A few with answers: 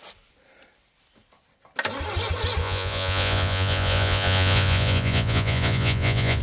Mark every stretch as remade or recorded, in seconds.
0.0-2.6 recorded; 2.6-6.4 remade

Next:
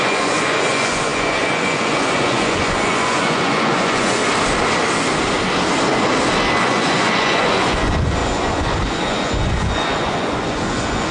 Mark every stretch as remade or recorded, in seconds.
0.0-4.2 remade; 4.2-6.6 recorded; 6.6-11.1 remade

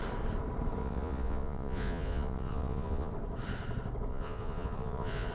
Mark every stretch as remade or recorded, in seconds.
0.0-0.8 recorded; 0.8-3.1 remade; 3.1-4.1 recorded; 4.1-5.3 remade

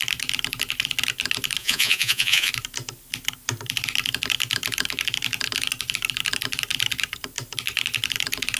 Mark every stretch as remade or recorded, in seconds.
0.0-1.6 recorded; 1.6-2.5 remade; 2.5-8.6 recorded

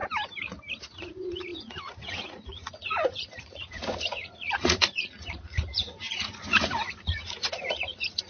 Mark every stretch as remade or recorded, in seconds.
0.0-0.8 recorded; 0.8-8.3 remade

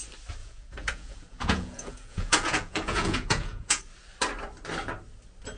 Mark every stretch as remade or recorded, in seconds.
0.0-0.4 recorded; 0.4-3.8 remade; 3.8-5.6 recorded